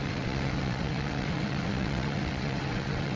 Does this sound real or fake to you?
fake